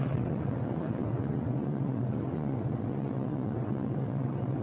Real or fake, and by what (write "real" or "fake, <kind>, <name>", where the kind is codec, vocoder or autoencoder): fake, vocoder, WaveNeXt